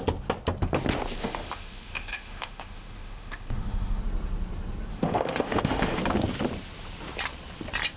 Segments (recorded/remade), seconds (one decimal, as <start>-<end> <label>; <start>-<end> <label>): 0.0-1.2 recorded; 1.2-4.0 remade; 4.0-4.9 recorded; 4.9-6.0 remade; 6.0-8.0 recorded